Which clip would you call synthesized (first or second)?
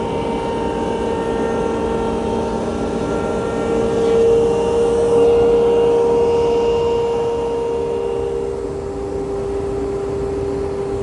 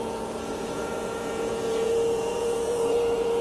second